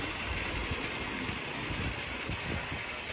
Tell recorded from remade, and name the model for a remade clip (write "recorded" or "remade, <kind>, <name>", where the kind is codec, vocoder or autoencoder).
recorded